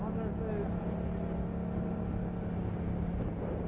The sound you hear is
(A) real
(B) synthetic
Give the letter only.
A